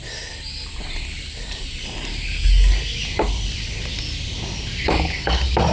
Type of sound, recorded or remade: recorded